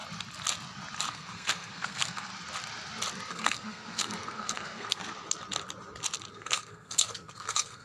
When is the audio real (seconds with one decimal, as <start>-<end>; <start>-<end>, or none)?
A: 0.0-1.1; 2.3-3.3; 5.0-6.3